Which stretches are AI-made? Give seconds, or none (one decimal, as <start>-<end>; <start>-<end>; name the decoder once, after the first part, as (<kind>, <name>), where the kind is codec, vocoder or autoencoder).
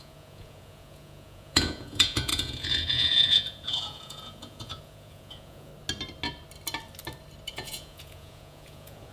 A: 0.0-5.7 (vocoder, Vocos); 7.5-9.1